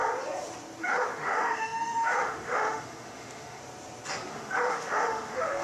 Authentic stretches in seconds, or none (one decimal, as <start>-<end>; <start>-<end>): 0.0-0.8; 3.6-4.3